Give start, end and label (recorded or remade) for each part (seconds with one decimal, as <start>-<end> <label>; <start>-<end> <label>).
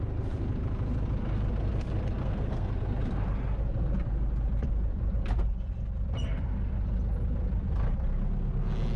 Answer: 0.0-2.2 recorded; 2.2-2.7 remade; 2.7-9.0 recorded